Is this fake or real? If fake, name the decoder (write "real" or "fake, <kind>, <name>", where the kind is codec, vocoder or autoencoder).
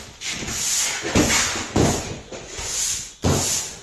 fake, vocoder, Vocos